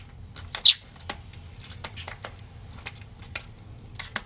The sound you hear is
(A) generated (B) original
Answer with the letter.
B